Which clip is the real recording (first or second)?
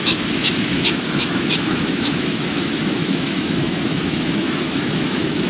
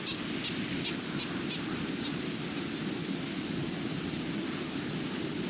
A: second